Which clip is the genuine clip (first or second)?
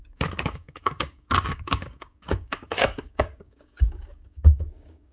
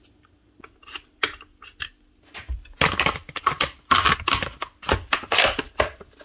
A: second